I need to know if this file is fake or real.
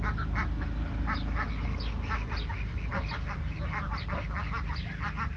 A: real